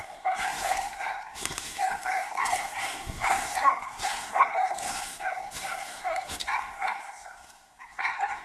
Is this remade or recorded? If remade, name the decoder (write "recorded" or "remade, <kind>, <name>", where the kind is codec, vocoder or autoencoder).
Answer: remade, codec, SNAC